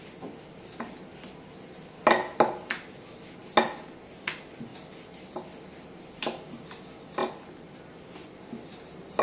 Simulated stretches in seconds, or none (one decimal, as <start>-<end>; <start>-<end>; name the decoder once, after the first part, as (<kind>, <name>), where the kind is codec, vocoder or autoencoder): none